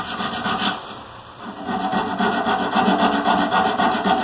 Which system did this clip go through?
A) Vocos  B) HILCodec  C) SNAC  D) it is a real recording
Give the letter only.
D